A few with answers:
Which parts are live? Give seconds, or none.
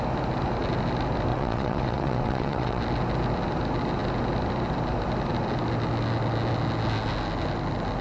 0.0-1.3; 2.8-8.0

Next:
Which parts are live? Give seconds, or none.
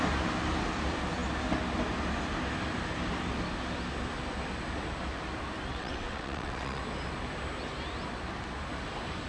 0.0-5.7; 6.8-9.3